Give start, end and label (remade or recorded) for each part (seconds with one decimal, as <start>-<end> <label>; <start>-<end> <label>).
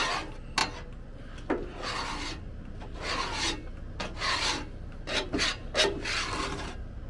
0.0-7.1 recorded